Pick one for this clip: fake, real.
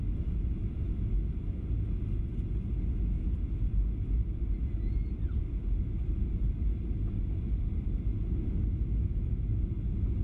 real